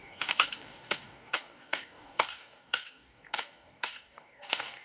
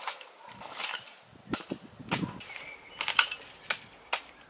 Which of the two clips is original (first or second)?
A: second